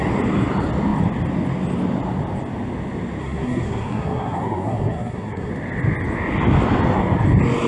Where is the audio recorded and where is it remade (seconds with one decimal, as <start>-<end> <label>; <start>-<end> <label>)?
0.0-3.2 recorded; 3.2-5.5 remade; 5.5-7.7 recorded